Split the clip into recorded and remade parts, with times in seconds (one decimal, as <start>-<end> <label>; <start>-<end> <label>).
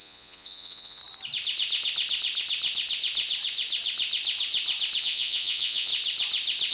0.0-1.0 remade; 1.0-5.0 recorded; 5.0-5.9 remade; 5.9-6.7 recorded